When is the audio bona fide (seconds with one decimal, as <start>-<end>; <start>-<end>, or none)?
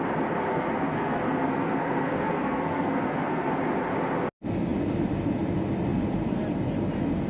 0.0-0.5; 3.5-7.3